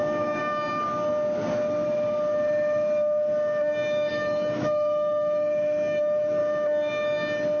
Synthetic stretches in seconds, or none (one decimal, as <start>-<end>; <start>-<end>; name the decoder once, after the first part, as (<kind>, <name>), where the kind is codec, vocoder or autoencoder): 0.0-0.4 (autoencoder, DAC-VAE); 4.1-6.4